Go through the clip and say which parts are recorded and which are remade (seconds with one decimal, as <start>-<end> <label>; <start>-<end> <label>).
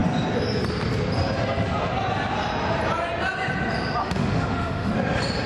0.0-4.0 recorded; 4.0-4.9 remade; 4.9-5.5 recorded